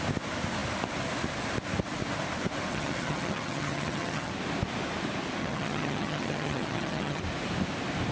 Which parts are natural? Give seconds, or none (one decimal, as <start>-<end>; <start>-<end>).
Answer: 0.0-2.7; 4.3-5.4; 7.2-8.1